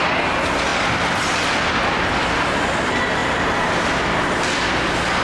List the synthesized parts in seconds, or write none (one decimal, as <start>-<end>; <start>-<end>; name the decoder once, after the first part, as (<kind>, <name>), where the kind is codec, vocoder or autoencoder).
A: none